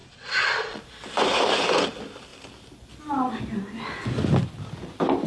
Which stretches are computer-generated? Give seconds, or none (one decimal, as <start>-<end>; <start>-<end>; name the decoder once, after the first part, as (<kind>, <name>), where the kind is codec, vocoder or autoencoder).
0.0-0.8 (vocoder, Vocos)

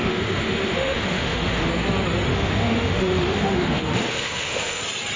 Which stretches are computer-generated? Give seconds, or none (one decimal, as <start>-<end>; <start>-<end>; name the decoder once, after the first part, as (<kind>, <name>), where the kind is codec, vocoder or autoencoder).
0.0-1.7 (autoencoder, DAC-VAE); 2.3-4.8

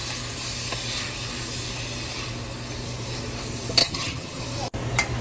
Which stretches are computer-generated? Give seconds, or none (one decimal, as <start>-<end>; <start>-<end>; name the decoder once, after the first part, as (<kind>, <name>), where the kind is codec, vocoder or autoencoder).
3.8-4.4 (vocoder, HiFi-GAN)

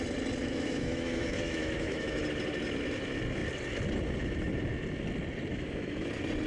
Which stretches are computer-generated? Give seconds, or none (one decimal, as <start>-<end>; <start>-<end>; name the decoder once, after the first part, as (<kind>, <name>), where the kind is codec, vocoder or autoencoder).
0.4-2.2 (autoencoder, DAC-VAE); 5.5-6.1

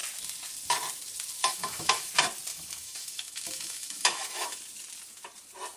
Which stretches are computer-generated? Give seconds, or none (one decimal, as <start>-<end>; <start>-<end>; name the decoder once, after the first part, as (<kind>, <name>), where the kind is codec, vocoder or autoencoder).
1.4-2.1 (autoencoder, DAC-VAE); 2.5-4.6

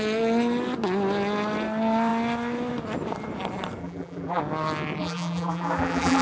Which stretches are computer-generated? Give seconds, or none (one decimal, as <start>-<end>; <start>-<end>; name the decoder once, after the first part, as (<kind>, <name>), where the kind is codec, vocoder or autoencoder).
3.8-4.4 (vocoder, BigVGAN v2); 5.0-6.2

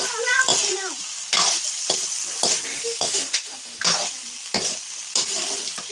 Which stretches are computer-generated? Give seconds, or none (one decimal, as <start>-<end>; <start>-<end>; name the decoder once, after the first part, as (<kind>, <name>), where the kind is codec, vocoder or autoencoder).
2.8-3.8 (autoencoder, DAC-VAE)

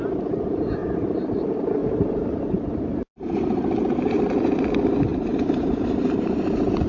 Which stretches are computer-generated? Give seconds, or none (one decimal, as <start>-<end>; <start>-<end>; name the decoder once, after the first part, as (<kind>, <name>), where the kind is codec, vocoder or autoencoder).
0.8-1.4 (vocoder, BigVGAN v2); 1.8-4.3; 5.1-6.9